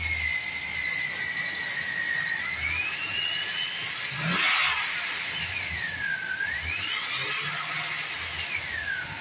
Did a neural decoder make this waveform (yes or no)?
no